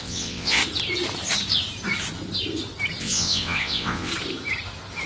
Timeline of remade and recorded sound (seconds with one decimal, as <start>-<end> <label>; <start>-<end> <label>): 0.0-0.6 remade; 0.6-3.0 recorded; 3.0-4.1 remade; 4.1-5.1 recorded